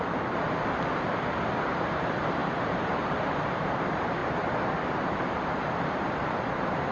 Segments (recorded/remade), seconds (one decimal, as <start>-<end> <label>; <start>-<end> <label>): 0.0-4.2 remade; 4.2-6.3 recorded; 6.3-6.9 remade